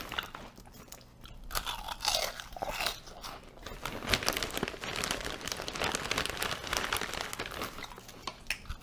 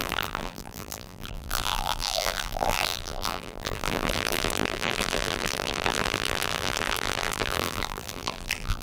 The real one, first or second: first